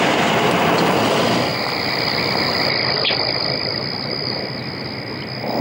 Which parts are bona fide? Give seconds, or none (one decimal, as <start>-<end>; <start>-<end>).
0.0-5.6